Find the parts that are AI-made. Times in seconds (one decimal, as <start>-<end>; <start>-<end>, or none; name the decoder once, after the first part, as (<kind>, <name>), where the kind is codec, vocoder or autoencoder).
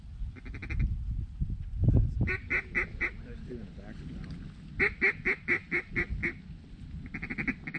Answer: none